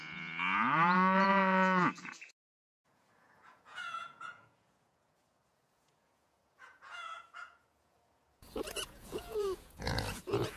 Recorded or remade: remade